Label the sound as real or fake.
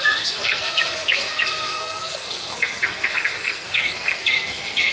fake